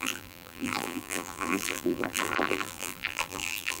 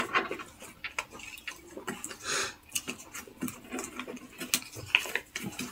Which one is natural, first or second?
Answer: second